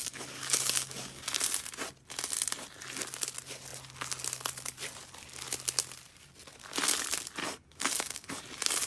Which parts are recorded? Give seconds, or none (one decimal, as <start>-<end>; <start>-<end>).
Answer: 1.2-7.4; 8.4-8.9